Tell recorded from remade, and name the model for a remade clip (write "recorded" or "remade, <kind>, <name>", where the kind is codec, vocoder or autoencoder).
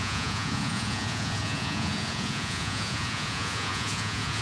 remade, vocoder, Vocos